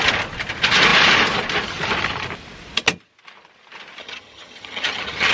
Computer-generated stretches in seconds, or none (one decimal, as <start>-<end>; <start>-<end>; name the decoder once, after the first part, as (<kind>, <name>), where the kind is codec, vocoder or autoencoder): 4.0-5.3 (vocoder, HiFi-GAN)